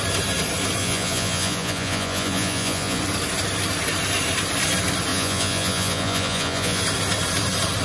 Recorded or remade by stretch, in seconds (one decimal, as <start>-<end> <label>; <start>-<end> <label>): 0.0-0.8 recorded; 0.8-3.0 remade; 3.0-5.1 recorded; 5.1-6.8 remade; 6.8-7.8 recorded